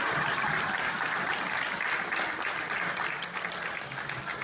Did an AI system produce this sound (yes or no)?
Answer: no